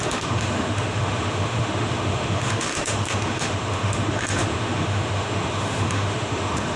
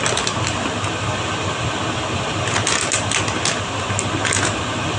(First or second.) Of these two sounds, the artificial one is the first